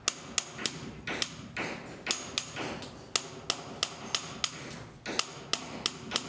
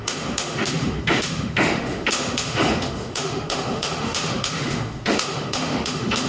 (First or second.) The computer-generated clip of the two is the second